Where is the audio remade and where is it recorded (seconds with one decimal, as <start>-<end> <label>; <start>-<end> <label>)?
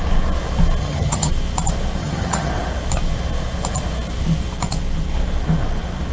0.0-0.8 recorded; 0.8-1.3 remade; 1.3-2.0 recorded; 2.0-2.5 remade; 2.5-6.1 recorded